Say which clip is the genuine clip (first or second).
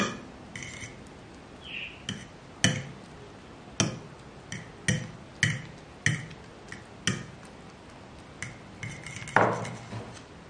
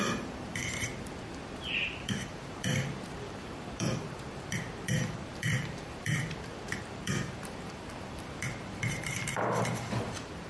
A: first